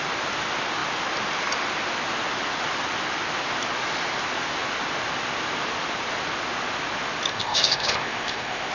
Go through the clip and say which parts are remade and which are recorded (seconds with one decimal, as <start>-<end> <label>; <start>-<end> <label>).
0.0-7.3 recorded; 7.3-8.7 remade